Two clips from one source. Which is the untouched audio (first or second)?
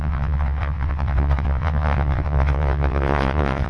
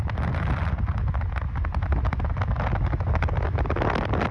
second